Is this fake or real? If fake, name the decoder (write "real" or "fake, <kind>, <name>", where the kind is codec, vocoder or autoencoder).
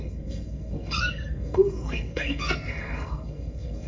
fake, codec, SNAC